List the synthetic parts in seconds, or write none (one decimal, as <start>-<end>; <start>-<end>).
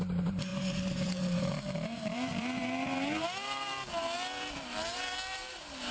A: 0.0-5.9